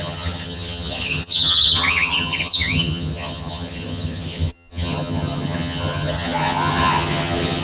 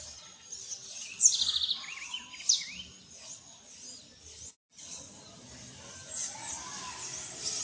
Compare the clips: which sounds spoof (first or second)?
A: first